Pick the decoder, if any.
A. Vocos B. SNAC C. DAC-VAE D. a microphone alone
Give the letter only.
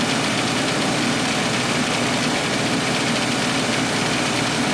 D